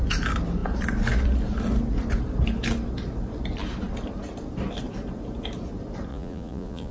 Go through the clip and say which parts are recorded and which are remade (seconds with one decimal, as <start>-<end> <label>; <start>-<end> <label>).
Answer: 0.0-6.1 recorded; 6.1-6.9 remade